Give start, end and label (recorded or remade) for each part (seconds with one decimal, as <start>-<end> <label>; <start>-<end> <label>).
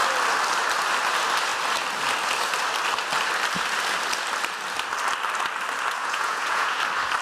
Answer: 0.0-6.0 recorded; 6.0-6.8 remade; 6.8-7.2 recorded